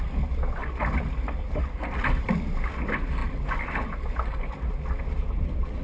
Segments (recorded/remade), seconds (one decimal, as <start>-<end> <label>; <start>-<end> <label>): 0.0-5.8 recorded